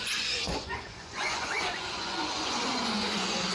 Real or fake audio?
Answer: fake